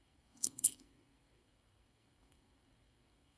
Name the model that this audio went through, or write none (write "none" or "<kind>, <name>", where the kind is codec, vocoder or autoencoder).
codec, SNAC